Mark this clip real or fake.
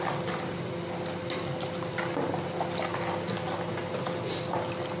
real